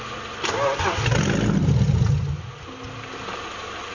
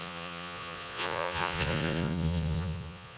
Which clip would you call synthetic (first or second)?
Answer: second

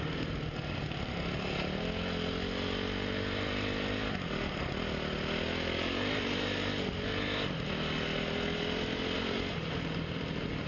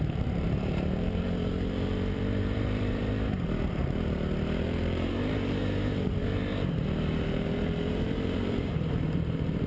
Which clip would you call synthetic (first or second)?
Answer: second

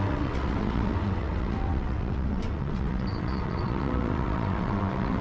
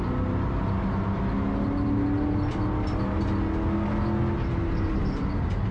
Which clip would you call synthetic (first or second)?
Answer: first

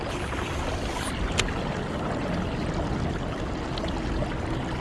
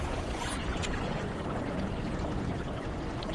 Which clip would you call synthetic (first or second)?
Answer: second